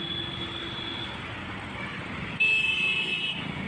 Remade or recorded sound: recorded